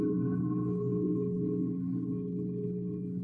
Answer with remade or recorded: remade